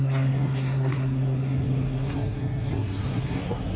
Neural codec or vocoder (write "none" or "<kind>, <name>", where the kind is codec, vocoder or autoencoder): codec, SNAC